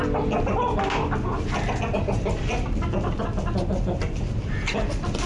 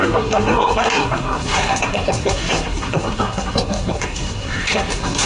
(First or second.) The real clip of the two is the first